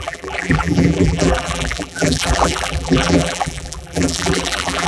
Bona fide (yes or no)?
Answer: no